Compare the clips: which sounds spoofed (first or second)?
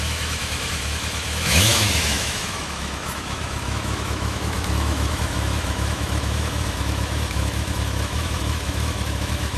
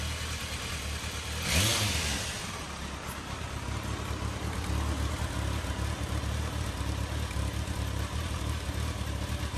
first